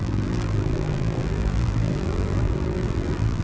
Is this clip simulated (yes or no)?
yes